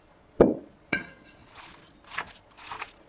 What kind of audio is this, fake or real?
fake